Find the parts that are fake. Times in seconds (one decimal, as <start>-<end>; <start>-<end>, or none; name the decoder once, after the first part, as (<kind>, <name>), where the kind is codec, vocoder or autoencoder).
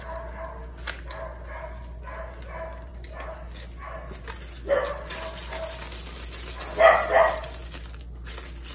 none